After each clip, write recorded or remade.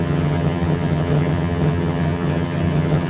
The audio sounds remade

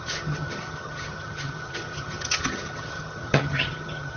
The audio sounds remade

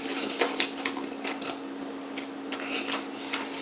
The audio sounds recorded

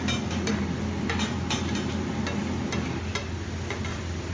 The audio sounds recorded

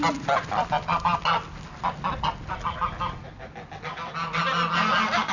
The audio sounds recorded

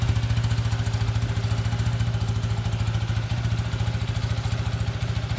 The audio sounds recorded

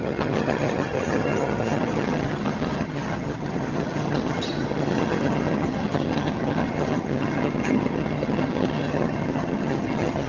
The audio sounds remade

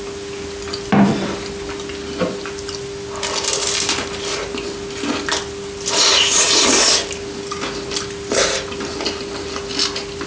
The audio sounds recorded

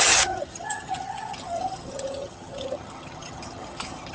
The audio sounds remade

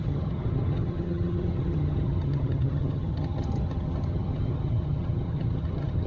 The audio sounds remade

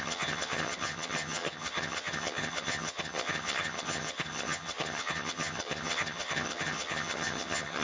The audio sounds remade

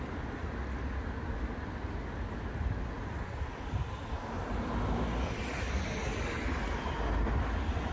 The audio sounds recorded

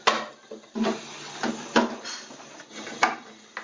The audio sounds recorded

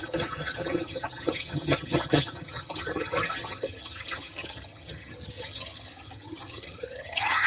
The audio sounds remade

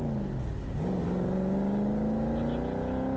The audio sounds recorded